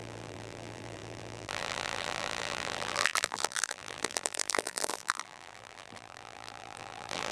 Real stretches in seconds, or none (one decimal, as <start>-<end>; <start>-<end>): none